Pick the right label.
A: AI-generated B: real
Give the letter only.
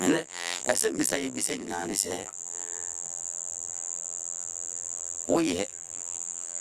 A